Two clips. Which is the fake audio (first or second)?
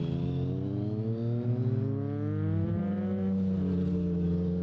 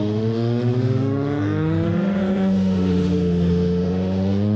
second